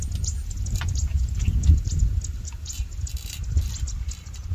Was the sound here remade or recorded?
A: recorded